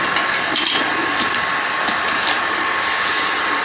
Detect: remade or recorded recorded